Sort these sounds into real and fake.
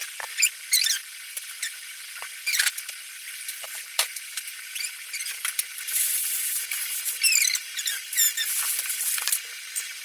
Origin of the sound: real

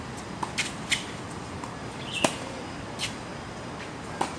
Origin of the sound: real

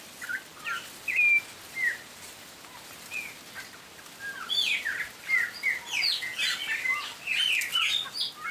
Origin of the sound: real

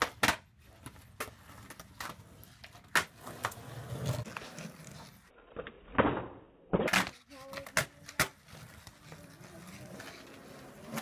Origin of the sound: real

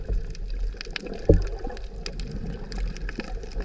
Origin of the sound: real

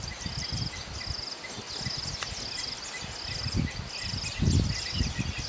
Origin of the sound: real